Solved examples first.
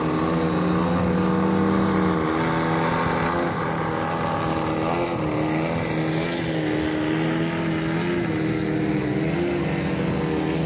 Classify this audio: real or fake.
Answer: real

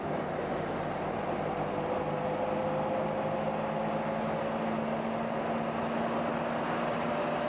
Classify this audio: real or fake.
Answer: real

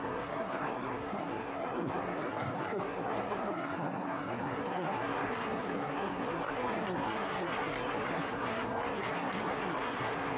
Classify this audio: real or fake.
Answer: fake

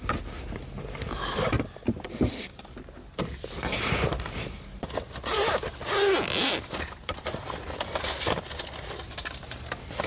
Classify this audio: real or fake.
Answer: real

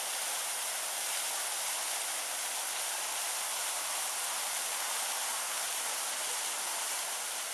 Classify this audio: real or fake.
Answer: real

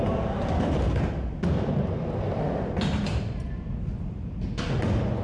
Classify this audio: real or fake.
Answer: real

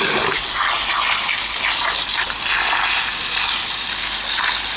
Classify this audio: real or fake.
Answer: real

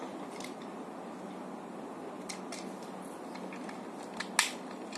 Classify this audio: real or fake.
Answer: real